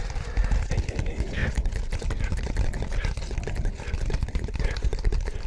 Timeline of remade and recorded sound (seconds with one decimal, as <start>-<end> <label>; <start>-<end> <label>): 0.0-5.5 recorded